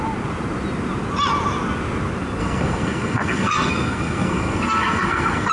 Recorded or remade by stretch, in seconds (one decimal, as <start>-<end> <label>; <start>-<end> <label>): 0.0-2.4 recorded; 2.4-5.5 remade